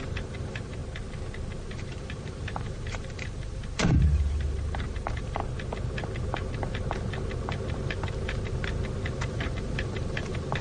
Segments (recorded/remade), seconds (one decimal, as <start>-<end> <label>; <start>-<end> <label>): 0.0-0.8 remade; 0.8-1.6 recorded; 1.6-5.4 remade; 5.4-9.3 recorded; 9.3-10.6 remade